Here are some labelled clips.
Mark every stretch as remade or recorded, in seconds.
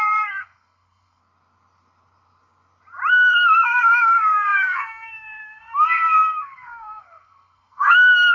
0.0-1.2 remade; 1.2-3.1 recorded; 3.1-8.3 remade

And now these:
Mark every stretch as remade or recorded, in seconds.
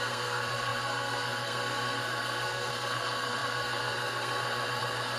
0.0-5.2 remade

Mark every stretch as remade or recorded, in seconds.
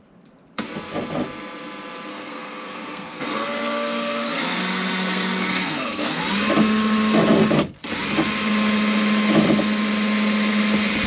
0.0-2.1 recorded; 2.1-6.2 remade; 6.2-11.1 recorded